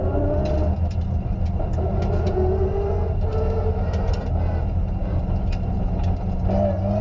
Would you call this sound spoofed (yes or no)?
no